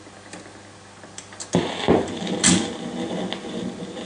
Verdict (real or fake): real